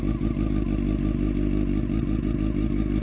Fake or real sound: real